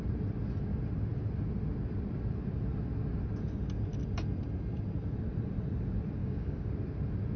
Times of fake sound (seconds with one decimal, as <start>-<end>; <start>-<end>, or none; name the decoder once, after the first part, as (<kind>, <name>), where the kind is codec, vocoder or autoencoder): 6.2-6.7 (codec, DAC)